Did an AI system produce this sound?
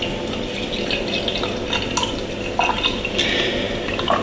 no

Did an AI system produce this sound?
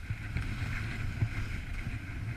no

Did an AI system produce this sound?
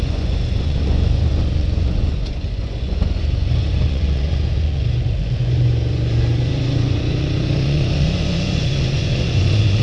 yes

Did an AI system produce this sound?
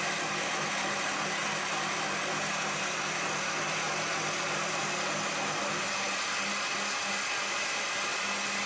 no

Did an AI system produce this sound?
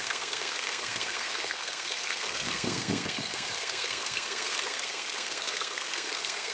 yes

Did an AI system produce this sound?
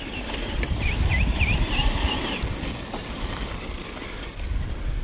no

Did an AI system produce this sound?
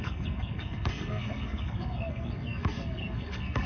yes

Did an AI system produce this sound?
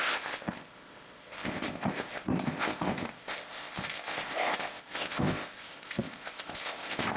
yes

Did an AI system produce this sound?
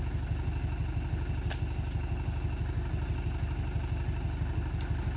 no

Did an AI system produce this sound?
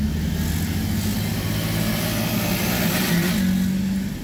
no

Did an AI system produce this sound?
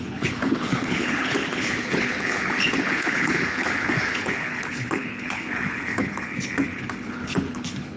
yes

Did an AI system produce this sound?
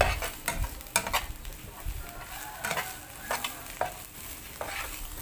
no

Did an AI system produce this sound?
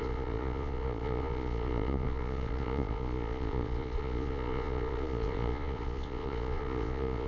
yes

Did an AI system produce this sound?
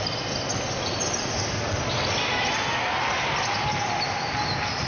no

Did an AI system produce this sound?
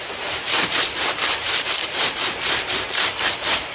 yes